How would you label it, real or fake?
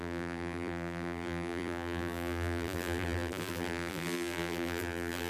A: fake